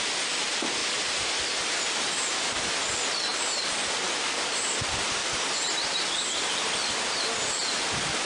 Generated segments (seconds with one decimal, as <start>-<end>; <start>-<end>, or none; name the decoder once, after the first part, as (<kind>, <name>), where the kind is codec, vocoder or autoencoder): 0.8-2.7 (vocoder, BigVGAN v2); 5.2-5.7